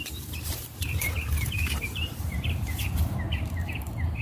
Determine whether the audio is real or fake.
fake